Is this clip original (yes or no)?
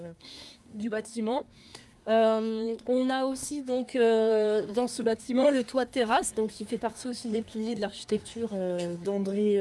no